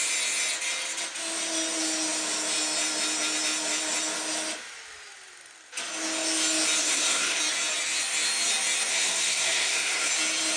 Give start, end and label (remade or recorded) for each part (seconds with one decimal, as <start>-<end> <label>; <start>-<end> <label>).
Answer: 0.0-6.8 recorded; 6.8-7.4 remade; 7.4-8.9 recorded; 8.9-10.1 remade; 10.1-10.6 recorded